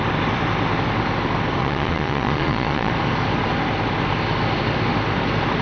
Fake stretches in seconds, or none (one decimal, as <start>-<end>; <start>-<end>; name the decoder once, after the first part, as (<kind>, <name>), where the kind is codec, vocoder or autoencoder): 1.6-2.9 (vocoder, Vocos)